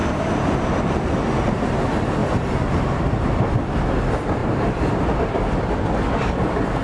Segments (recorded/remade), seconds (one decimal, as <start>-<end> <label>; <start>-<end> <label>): 0.0-2.2 recorded; 2.2-3.0 remade; 3.0-4.4 recorded; 4.4-5.2 remade; 5.2-6.8 recorded